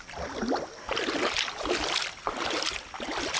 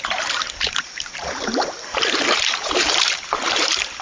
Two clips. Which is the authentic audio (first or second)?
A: first